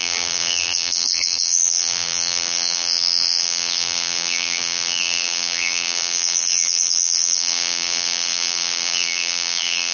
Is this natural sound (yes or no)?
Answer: no